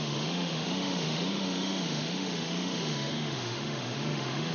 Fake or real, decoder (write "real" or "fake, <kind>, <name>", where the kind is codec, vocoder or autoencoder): fake, autoencoder, DAC-VAE